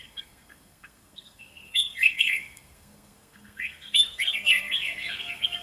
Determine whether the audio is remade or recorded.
remade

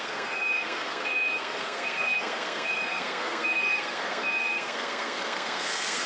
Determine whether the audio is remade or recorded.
remade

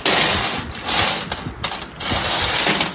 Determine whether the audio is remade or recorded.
recorded